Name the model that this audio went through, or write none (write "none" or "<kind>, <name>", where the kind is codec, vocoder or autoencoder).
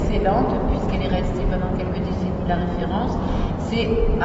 none